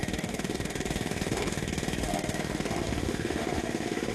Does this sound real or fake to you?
fake